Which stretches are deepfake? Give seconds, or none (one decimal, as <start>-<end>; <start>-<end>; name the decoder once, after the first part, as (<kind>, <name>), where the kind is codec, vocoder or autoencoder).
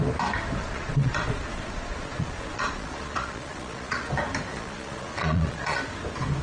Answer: 0.6-4.1 (vocoder, Vocos); 4.5-5.8